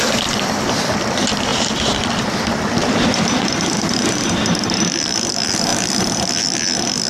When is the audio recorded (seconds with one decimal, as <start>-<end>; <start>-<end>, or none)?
0.0-7.1